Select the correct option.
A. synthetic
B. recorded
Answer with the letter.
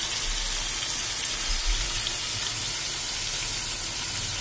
B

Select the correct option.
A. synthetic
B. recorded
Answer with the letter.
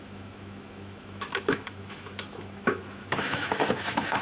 A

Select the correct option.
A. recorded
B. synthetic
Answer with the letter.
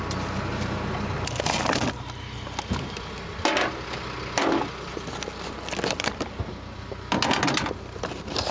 A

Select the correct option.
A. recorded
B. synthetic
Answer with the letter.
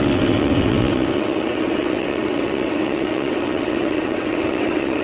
B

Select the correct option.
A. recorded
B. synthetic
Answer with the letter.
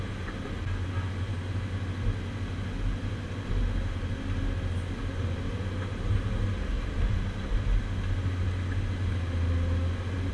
A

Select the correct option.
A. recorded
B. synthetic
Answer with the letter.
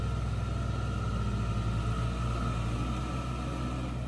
A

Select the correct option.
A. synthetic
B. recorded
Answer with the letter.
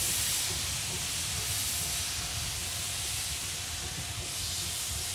B